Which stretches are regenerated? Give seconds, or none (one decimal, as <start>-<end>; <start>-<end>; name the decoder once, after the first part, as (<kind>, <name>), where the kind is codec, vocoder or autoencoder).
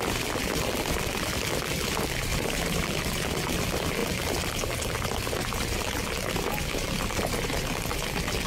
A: 2.3-3.0 (vocoder, BigVGAN v2)